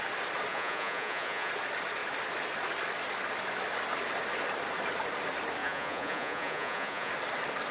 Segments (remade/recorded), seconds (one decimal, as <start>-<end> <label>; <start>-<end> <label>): 0.0-0.5 recorded; 0.5-1.5 remade; 1.5-5.6 recorded; 5.6-7.1 remade; 7.1-7.7 recorded